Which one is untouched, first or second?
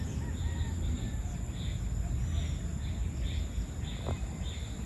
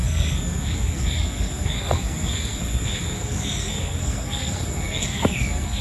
first